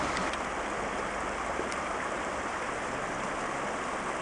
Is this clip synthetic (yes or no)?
no